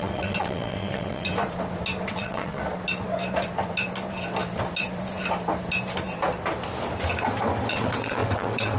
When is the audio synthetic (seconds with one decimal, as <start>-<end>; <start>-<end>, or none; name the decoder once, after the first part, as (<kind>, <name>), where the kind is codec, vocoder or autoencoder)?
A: 0.0-1.3 (vocoder, WaveNeXt); 2.1-2.6; 7.7-8.8